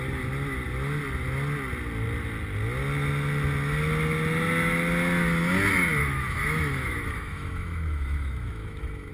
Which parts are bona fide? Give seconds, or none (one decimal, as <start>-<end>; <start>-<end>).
0.0-6.0